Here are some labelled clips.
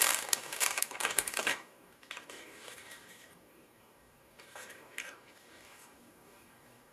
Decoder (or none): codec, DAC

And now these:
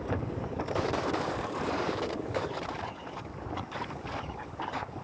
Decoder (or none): codec, DAC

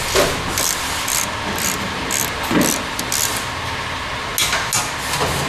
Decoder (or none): none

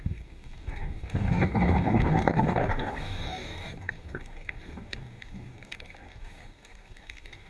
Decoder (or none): codec, DAC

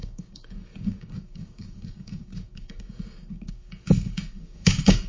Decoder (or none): codec, DAC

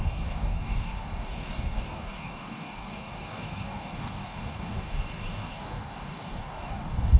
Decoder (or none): codec, DAC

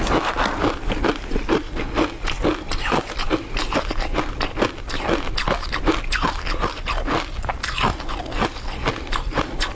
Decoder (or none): none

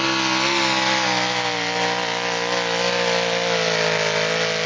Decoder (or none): none